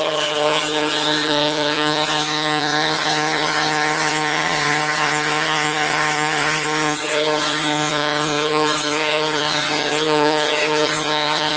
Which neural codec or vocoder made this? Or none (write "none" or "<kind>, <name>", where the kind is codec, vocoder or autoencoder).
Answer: vocoder, HiFi-GAN